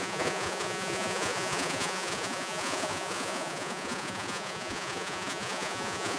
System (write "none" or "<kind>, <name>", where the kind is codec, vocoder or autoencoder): vocoder, Vocos